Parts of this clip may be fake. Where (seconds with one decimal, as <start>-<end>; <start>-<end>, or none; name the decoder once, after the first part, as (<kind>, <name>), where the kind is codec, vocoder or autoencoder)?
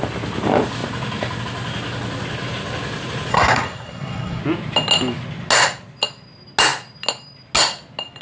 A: 3.3-4.4 (codec, SNAC)